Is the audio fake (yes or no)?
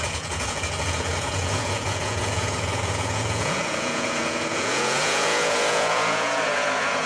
yes